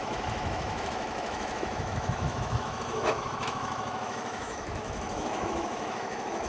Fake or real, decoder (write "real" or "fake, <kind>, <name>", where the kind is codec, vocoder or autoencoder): fake, autoencoder, DAC-VAE